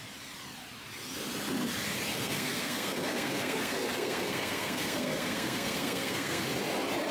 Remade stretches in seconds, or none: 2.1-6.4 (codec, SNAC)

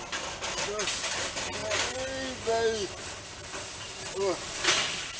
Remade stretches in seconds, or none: none

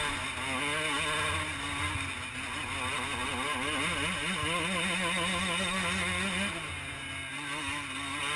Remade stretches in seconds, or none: none

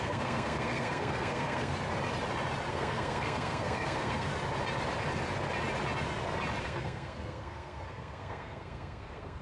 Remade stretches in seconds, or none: 0.0-1.7 (codec, SNAC); 2.7-4.3; 6.6-9.4

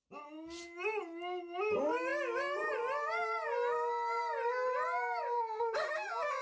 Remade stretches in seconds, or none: none

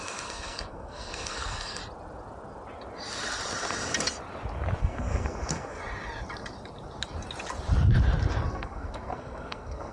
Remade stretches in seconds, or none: 0.0-1.8 (codec, SNAC); 4.8-5.8; 8.5-9.9